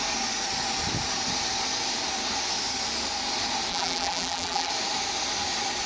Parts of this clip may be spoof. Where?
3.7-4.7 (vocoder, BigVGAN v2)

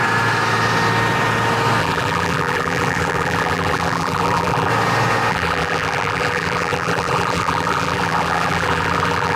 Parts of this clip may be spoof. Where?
1.8-4.7 (vocoder, BigVGAN v2); 5.3-9.4

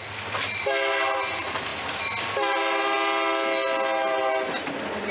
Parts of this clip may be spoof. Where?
none

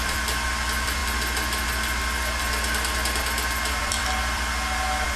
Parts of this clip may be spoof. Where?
0.0-1.0 (vocoder, BigVGAN v2); 3.8-5.2

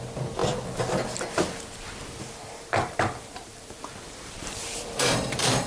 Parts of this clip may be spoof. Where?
2.0-5.7 (vocoder, BigVGAN v2)

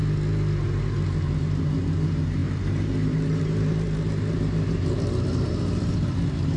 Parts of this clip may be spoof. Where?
1.4-6.6 (vocoder, BigVGAN v2)

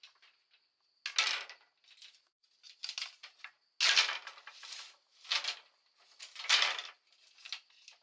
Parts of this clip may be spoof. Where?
none

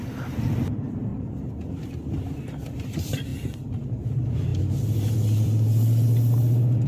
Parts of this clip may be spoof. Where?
0.0-6.9 (vocoder, BigVGAN v2)